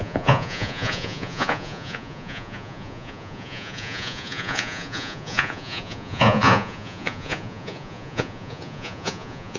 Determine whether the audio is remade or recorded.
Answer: remade